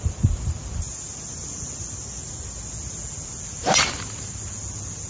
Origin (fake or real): real